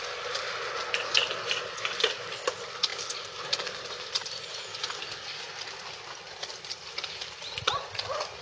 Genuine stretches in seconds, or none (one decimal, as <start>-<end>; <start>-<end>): 0.0-8.4